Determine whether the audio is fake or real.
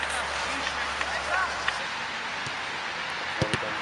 real